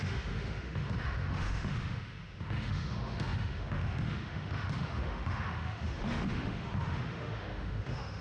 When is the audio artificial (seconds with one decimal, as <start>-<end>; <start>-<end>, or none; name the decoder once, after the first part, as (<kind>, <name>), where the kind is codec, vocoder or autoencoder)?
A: 0.0-8.2 (autoencoder, DAC-VAE)